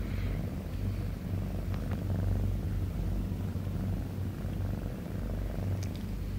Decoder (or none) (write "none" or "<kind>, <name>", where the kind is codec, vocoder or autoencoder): none